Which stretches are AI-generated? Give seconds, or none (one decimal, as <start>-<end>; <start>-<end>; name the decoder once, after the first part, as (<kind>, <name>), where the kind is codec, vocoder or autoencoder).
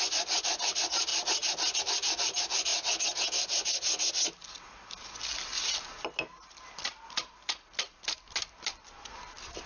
none